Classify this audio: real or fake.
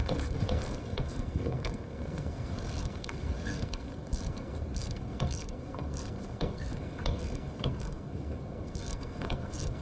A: fake